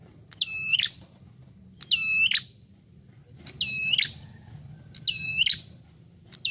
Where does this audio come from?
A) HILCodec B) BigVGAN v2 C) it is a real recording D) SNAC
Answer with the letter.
C